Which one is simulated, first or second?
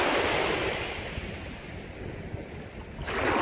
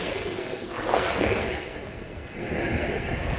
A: second